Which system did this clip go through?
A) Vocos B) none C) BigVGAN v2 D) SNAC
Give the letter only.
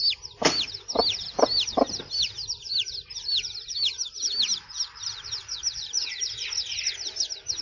C